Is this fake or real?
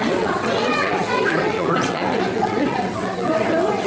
fake